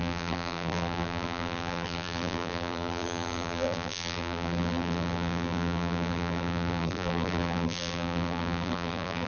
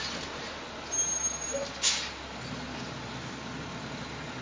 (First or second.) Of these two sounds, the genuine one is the second